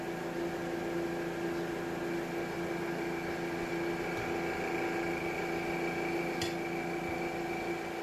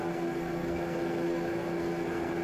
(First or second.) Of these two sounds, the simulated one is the second